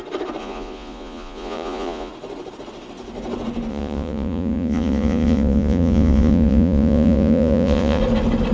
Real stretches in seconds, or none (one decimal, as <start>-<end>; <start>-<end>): 0.0-0.4; 2.1-3.7; 8.0-8.5